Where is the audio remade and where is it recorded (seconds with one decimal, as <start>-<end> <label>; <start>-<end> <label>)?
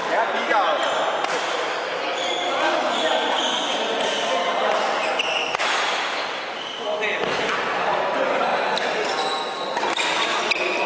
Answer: 0.0-10.9 recorded